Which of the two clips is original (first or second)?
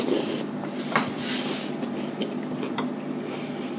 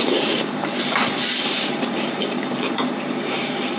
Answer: first